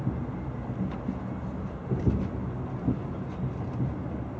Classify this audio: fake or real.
real